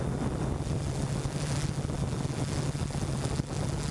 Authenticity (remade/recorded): recorded